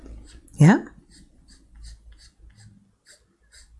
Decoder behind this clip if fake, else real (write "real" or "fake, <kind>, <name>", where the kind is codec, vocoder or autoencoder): real